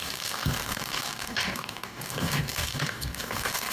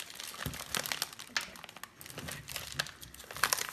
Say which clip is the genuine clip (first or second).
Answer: second